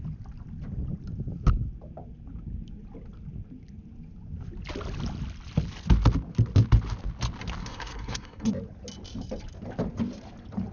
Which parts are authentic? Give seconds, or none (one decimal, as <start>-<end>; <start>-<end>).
0.0-7.6; 8.5-10.7